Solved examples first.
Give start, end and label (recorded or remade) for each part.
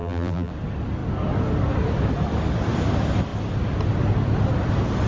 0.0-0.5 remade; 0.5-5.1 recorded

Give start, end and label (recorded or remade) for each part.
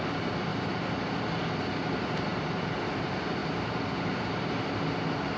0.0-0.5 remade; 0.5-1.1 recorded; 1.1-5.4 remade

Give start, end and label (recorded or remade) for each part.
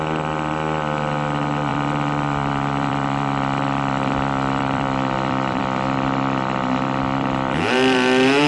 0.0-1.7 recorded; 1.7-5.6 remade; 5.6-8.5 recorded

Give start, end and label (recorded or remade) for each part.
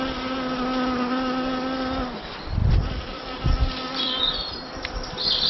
0.0-2.6 recorded; 2.6-4.2 remade; 4.2-5.5 recorded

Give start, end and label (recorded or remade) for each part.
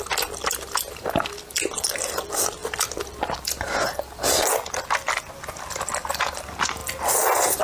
0.0-2.6 recorded; 2.6-4.4 remade; 4.4-7.6 recorded